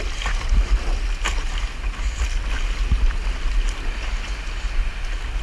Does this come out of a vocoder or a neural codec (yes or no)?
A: no